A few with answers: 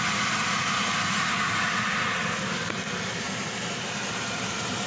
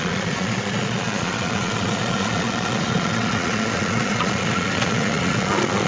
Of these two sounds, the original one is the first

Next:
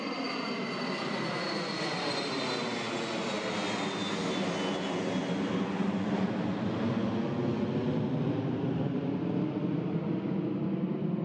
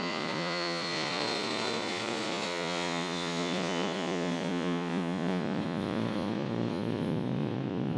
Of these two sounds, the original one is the first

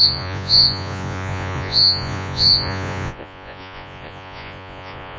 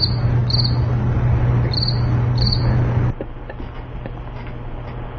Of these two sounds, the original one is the second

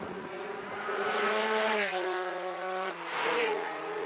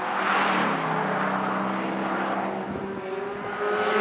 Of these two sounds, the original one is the second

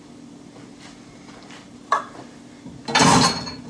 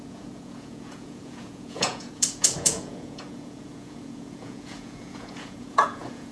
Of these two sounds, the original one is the first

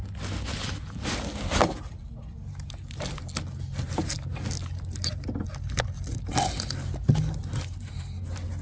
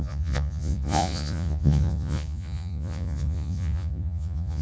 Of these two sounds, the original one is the first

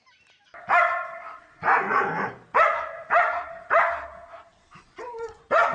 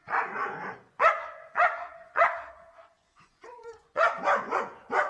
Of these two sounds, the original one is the first